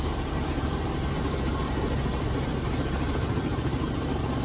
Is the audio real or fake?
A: fake